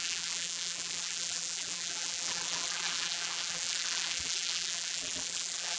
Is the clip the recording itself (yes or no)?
no